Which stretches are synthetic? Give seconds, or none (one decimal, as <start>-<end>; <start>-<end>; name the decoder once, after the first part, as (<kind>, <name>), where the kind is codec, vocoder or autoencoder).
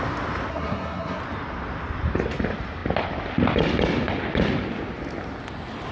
0.5-1.2 (codec, SNAC)